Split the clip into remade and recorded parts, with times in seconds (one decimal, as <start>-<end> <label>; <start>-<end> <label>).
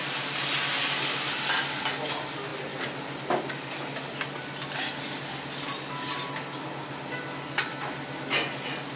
0.0-9.0 recorded